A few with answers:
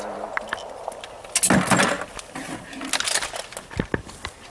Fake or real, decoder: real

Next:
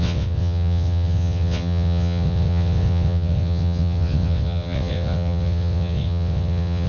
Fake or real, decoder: fake, vocoder, WaveNeXt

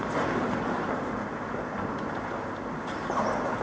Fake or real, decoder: real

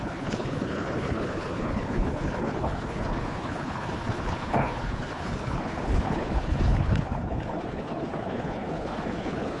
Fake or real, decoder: fake, codec, HILCodec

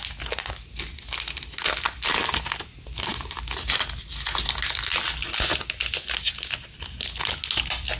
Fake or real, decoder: real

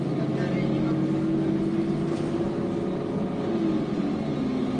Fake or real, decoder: real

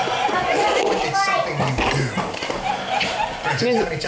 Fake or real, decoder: real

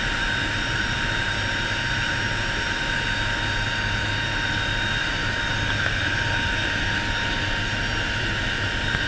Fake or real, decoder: real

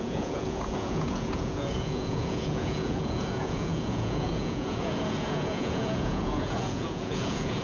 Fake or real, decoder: fake, vocoder, Vocos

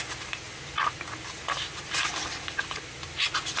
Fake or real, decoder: real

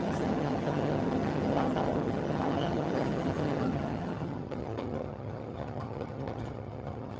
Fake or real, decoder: fake, vocoder, HiFi-GAN